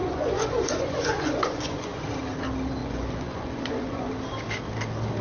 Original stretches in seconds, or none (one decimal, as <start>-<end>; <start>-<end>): 2.0-2.8; 4.1-5.2